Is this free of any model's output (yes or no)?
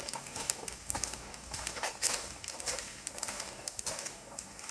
no